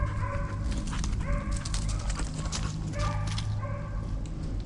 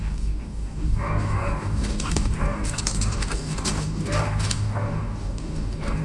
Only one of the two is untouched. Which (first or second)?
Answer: first